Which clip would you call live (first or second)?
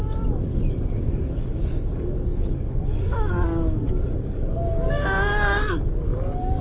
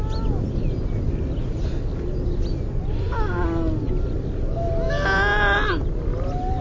second